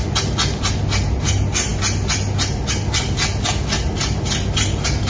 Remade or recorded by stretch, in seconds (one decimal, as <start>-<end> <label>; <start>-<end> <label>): 0.0-5.1 recorded